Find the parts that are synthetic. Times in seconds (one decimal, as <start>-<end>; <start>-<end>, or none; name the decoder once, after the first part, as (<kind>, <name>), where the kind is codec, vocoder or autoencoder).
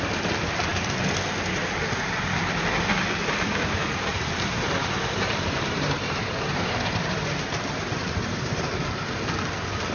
4.1-8.7 (vocoder, BigVGAN v2)